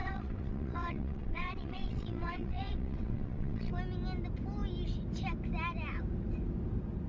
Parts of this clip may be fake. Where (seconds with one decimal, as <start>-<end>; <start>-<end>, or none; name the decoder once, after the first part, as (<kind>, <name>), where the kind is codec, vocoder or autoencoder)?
0.0-3.7 (vocoder, WaveNeXt)